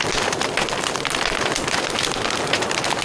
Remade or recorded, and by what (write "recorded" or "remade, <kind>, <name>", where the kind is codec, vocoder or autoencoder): recorded